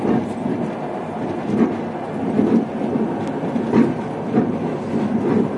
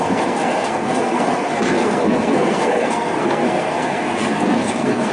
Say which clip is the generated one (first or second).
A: second